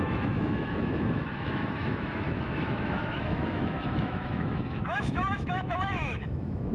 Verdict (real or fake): fake